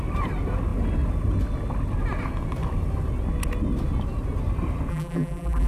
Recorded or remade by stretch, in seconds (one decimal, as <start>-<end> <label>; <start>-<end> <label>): 0.0-4.9 recorded; 4.9-5.7 remade